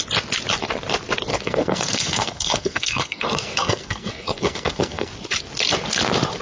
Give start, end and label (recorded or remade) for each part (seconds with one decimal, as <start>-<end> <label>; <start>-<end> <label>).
0.0-1.3 recorded; 1.3-5.1 remade; 5.1-6.4 recorded